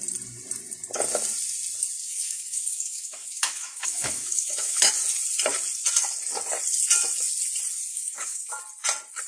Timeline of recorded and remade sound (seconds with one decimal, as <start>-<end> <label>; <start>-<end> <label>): 0.0-2.0 recorded; 2.0-4.9 remade; 4.9-7.9 recorded; 7.9-8.6 remade; 8.6-9.3 recorded